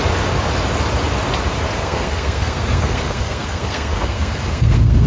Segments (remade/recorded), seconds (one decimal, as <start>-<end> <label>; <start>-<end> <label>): 0.0-1.8 recorded; 1.8-5.1 remade